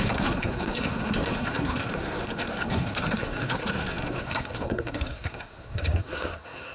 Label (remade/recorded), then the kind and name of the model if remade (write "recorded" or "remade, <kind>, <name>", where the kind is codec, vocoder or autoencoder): remade, codec, SNAC